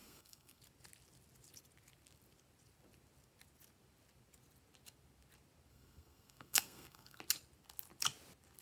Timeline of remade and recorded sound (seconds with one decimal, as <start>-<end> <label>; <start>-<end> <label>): 0.0-0.6 remade; 0.6-5.7 recorded; 5.7-7.2 remade; 7.2-8.6 recorded